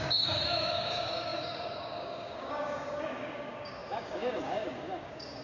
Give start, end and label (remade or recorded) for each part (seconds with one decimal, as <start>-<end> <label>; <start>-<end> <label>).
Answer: 0.0-5.4 remade